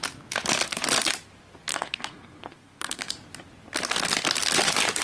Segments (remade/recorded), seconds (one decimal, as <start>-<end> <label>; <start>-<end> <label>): 0.0-1.7 recorded; 1.7-3.1 remade; 3.1-5.0 recorded

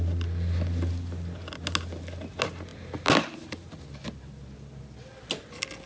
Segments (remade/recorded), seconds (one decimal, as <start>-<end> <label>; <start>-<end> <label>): 0.0-5.9 recorded

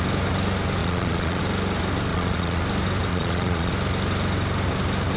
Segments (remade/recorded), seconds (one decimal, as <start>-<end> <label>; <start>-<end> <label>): 0.0-0.8 recorded; 0.8-1.4 remade; 1.4-2.1 recorded; 2.1-2.6 remade; 2.6-3.1 recorded; 3.1-3.7 remade; 3.7-5.2 recorded

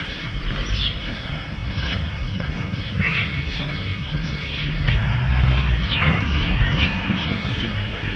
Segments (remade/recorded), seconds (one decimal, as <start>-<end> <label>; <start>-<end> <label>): 0.0-0.4 remade; 0.4-1.0 recorded; 1.0-8.2 remade

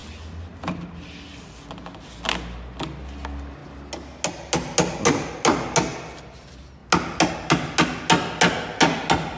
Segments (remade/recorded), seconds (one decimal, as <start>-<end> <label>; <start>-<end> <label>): 0.0-9.4 recorded

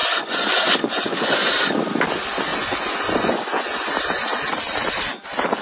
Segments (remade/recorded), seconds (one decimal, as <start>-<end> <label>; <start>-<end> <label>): 0.0-1.5 remade; 1.5-2.5 recorded; 2.5-3.9 remade; 3.9-5.6 recorded

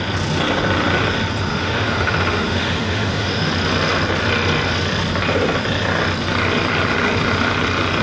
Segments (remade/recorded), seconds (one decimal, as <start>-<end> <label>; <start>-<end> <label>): 0.0-1.5 recorded; 1.5-3.5 remade; 3.5-8.0 recorded